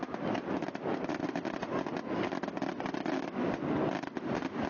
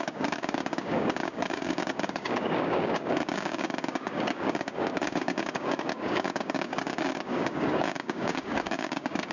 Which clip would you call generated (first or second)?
second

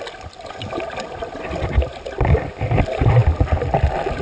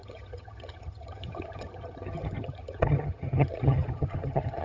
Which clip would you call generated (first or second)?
second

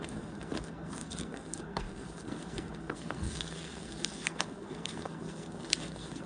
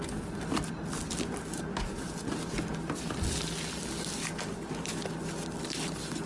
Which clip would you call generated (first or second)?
first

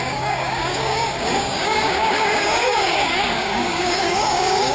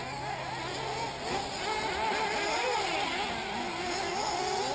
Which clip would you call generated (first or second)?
first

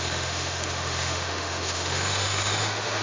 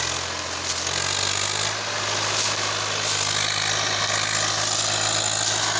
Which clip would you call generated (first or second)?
first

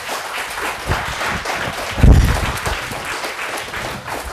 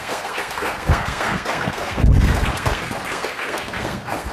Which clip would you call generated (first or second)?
second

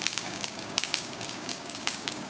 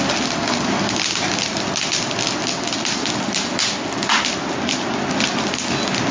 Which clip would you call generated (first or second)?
first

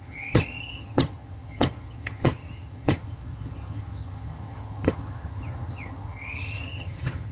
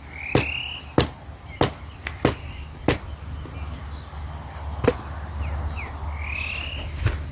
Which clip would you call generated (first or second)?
first